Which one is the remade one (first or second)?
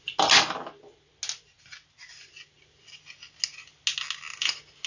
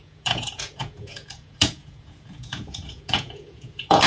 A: second